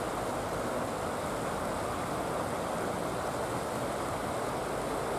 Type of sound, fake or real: real